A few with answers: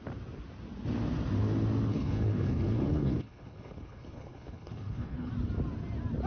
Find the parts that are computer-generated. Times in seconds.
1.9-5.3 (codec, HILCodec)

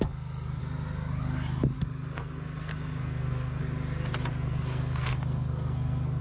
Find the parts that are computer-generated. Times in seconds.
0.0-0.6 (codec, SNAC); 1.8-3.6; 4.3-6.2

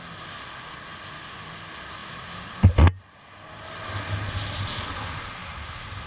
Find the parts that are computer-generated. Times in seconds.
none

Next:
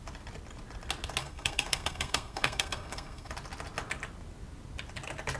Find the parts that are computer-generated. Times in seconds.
1.2-3.3 (codec, SNAC)

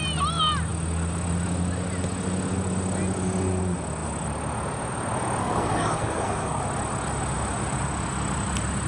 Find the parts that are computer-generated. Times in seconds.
5.4-6.6 (codec, SNAC)